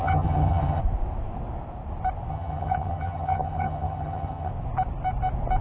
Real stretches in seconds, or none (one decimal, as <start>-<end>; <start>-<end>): 0.8-2.3; 4.5-5.6

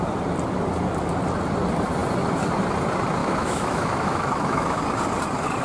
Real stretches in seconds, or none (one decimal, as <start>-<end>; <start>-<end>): 0.0-3.2; 4.8-5.6

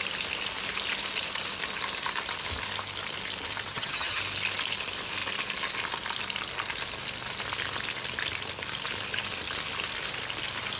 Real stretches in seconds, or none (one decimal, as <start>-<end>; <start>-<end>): 0.0-3.7; 4.2-10.8

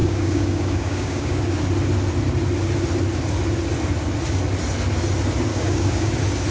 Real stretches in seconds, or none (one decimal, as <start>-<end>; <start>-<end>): 1.6-5.5; 6.1-6.5

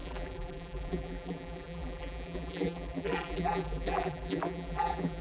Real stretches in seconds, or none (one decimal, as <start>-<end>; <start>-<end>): none

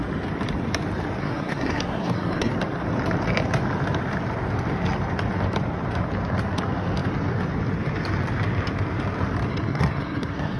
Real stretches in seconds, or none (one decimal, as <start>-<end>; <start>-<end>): 0.0-1.2; 2.5-9.5